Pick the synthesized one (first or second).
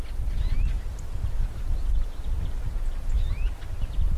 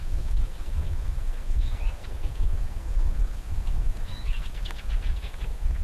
second